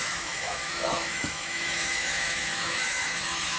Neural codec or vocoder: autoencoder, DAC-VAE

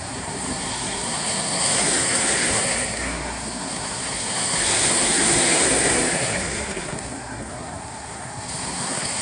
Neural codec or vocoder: codec, SNAC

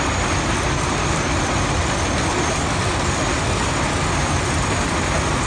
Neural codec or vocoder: none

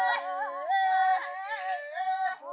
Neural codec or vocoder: none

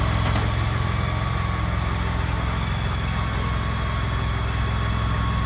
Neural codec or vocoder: none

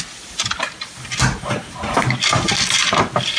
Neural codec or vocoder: none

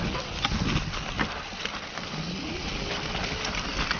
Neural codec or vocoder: none